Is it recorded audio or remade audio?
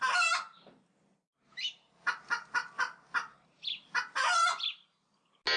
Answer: recorded